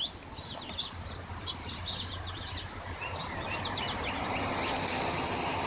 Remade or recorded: recorded